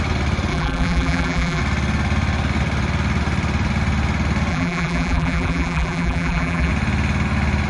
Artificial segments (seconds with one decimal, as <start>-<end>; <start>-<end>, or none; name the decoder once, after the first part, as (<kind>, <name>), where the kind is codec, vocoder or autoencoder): 0.5-1.6 (vocoder, BigVGAN v2); 4.5-6.7